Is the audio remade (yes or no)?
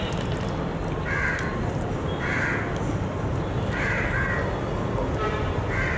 no